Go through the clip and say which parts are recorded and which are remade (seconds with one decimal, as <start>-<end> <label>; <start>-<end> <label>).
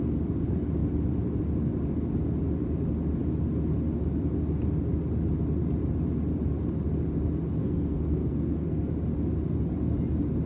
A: 0.0-7.6 recorded; 7.6-8.9 remade; 8.9-10.5 recorded